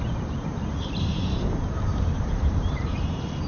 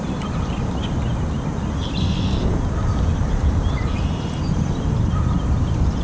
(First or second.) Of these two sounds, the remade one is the first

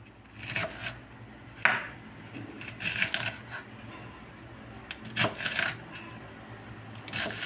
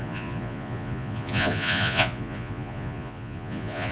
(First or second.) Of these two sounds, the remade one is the second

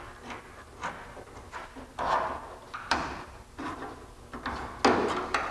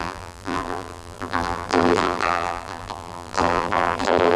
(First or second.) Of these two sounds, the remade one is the second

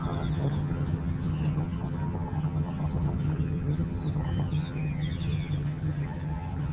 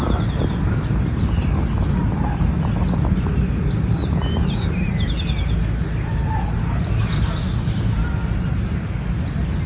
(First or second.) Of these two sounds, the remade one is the first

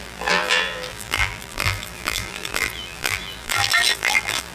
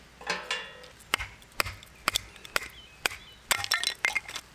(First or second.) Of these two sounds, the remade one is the first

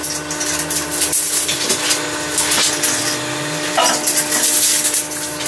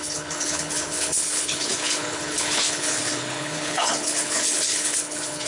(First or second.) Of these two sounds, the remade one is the second